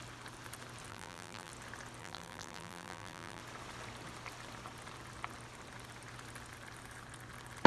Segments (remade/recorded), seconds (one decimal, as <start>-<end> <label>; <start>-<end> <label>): 0.0-0.9 recorded; 0.9-1.5 remade; 1.5-2.0 recorded; 2.0-3.4 remade; 3.4-7.7 recorded

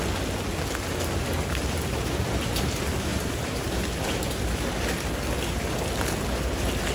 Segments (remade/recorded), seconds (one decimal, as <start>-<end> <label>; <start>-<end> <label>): 0.0-3.1 recorded; 3.1-3.9 remade; 3.9-6.9 recorded

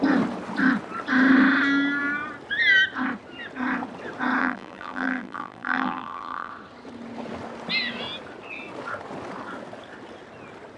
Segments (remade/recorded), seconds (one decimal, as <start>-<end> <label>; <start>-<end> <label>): 0.0-4.4 recorded; 4.4-6.5 remade; 6.5-10.8 recorded

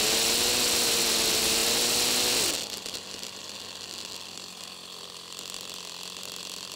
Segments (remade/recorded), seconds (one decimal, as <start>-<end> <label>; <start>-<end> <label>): 0.0-6.8 recorded

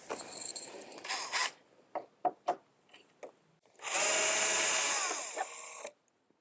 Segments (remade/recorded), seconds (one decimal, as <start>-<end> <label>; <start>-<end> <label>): 0.0-6.4 recorded

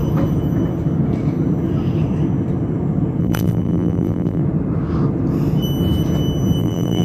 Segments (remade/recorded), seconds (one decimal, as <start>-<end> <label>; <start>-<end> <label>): 0.0-3.2 recorded; 3.2-4.4 remade; 4.4-6.6 recorded; 6.6-7.0 remade

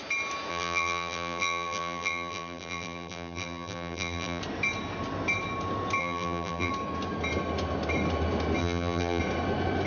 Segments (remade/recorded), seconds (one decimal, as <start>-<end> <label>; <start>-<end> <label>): 0.0-0.5 recorded; 0.5-4.4 remade; 4.4-6.0 recorded; 6.0-6.7 remade; 6.7-8.6 recorded; 8.6-9.2 remade; 9.2-9.9 recorded

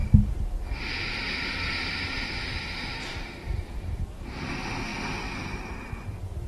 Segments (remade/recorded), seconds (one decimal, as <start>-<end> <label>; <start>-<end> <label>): 0.0-3.4 recorded; 3.4-4.5 remade; 4.5-4.9 recorded; 4.9-6.5 remade